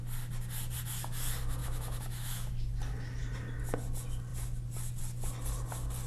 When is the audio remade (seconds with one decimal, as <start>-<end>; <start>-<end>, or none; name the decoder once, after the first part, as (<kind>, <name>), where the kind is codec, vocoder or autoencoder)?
1.6-2.7 (autoencoder, DAC-VAE)